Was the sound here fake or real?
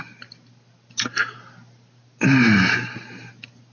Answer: real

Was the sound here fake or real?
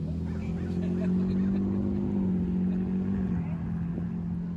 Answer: real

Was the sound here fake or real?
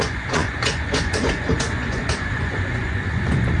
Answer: fake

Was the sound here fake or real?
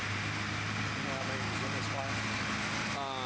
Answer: real